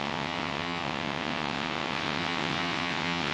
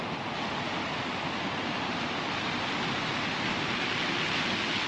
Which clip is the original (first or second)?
second